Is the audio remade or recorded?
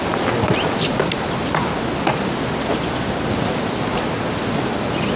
recorded